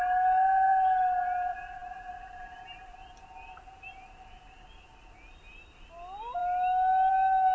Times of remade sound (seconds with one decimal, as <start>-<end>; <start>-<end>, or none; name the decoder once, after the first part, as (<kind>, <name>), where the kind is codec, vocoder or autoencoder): none